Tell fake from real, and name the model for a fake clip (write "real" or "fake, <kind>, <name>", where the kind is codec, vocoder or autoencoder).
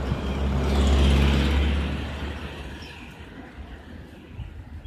real